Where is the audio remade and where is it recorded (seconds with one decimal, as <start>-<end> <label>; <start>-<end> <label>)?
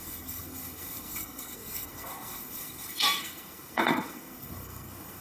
0.0-5.2 remade